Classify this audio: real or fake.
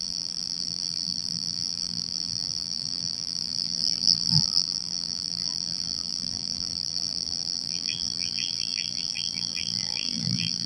fake